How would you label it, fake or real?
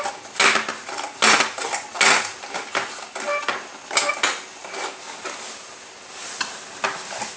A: real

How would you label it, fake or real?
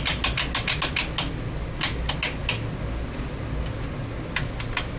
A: real